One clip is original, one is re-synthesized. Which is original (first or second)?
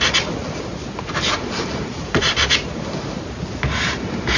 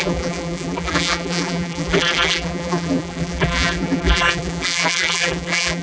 first